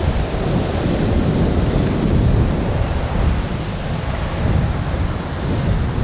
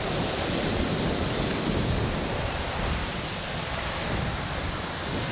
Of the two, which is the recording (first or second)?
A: first